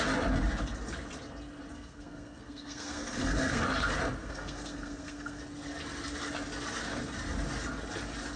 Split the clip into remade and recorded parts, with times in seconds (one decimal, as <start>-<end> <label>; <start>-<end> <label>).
0.0-1.7 recorded; 1.7-3.6 remade; 3.6-4.2 recorded; 4.2-5.4 remade; 5.4-8.4 recorded